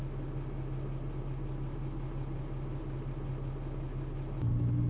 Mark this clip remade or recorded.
recorded